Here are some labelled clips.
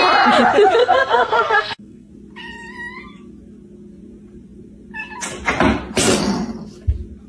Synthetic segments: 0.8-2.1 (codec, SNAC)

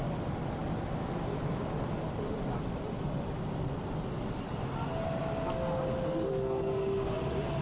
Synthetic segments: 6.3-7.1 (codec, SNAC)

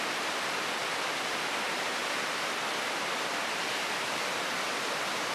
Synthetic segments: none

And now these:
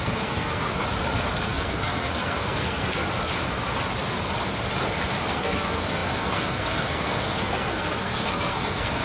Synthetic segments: 0.0-0.8 (codec, SNAC); 1.4-3.0; 5.3-9.0

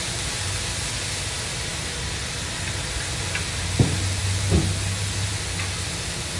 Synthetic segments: none

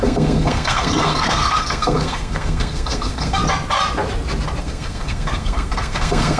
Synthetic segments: 0.0-3.4 (codec, SNAC); 4.6-6.4